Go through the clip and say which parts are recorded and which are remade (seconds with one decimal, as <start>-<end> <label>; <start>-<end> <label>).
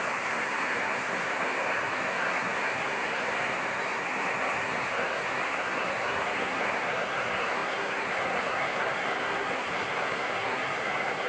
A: 0.0-11.3 remade